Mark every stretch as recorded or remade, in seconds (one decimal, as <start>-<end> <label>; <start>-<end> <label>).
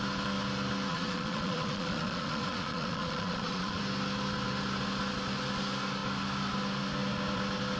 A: 0.0-0.9 recorded; 0.9-3.8 remade; 3.8-7.8 recorded